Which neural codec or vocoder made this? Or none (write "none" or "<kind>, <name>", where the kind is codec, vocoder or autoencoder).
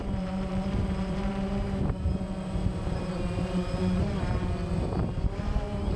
vocoder, BigVGAN v2